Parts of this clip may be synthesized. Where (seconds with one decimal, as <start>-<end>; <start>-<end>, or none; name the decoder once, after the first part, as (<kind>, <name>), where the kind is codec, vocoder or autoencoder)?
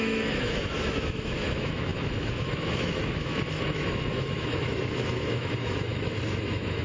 0.0-6.8 (autoencoder, DAC-VAE)